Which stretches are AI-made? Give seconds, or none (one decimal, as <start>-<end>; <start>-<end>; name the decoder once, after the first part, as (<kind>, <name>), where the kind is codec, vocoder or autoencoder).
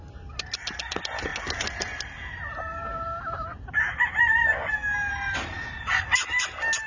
none